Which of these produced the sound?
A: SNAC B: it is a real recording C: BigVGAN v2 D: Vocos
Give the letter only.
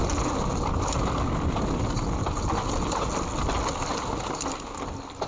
B